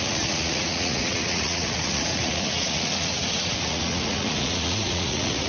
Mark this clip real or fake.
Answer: fake